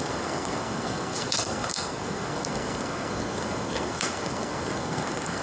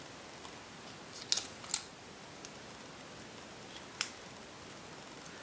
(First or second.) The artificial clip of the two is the first